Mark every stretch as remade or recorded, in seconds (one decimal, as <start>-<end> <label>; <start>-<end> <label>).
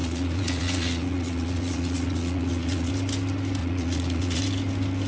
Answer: 0.0-2.9 remade; 2.9-3.6 recorded; 3.6-4.4 remade; 4.4-5.1 recorded